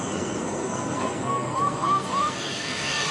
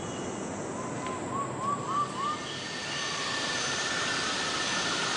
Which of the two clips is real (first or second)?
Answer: second